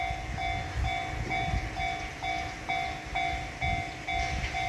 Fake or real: real